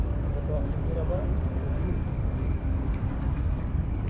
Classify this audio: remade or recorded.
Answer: remade